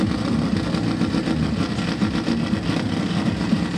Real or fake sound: real